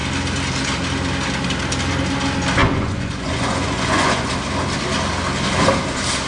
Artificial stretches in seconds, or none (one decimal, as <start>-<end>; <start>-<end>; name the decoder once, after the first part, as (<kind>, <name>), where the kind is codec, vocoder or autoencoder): 2.6-4.3 (vocoder, Vocos)